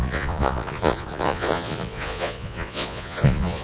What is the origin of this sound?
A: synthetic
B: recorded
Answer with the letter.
A